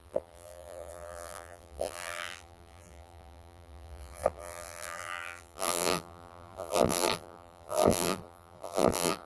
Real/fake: fake